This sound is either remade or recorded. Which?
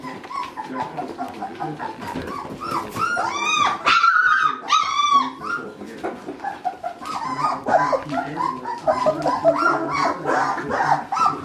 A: recorded